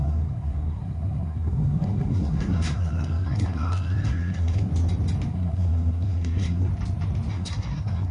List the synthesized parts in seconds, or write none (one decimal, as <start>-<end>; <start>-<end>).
0.0-4.7; 5.3-6.7; 7.3-8.1

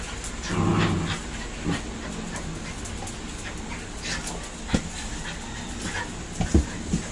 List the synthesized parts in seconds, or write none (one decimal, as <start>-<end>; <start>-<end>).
none

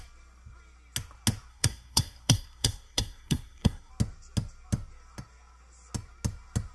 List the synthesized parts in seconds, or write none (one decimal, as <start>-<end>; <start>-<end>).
1.5-3.9

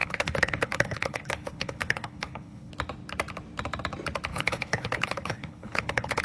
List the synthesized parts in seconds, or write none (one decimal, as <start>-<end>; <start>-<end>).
0.0-2.7; 4.3-6.2

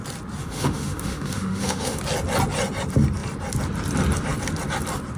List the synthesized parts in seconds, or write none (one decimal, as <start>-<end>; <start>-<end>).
0.4-2.0